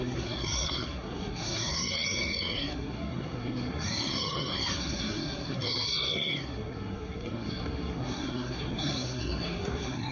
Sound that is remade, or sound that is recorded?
remade